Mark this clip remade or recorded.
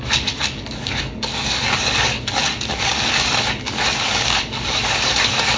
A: remade